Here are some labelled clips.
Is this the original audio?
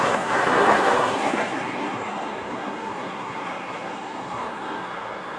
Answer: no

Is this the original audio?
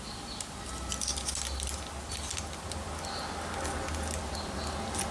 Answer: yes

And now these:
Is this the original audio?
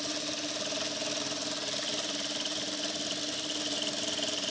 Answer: yes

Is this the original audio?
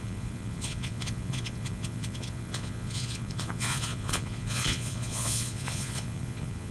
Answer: no